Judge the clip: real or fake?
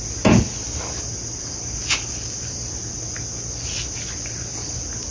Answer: real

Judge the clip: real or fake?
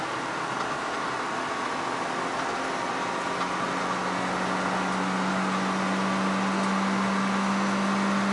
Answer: real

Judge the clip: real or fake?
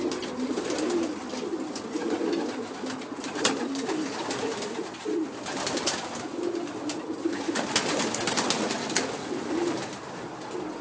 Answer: real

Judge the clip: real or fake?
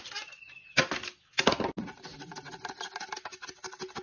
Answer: real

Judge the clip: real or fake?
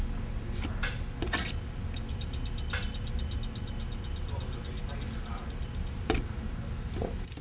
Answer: real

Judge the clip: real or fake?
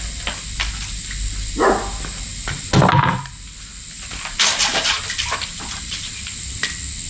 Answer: real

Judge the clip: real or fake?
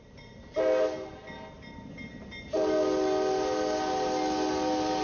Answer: real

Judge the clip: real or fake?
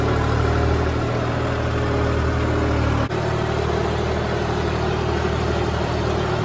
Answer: real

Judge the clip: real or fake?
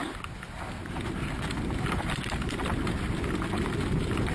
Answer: real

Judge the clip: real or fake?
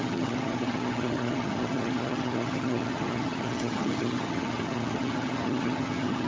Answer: fake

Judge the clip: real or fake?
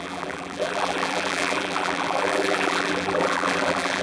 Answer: fake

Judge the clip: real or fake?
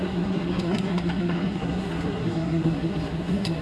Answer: fake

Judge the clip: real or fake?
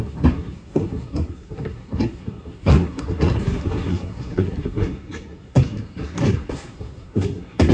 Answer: fake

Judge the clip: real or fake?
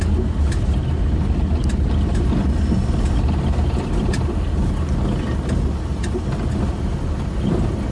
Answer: real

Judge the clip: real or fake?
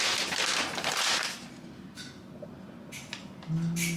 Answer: real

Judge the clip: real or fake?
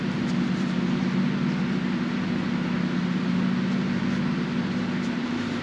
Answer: real